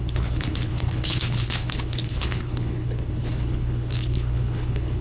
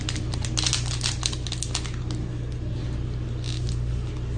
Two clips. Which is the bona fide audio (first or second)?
second